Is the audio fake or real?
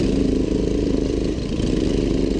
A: fake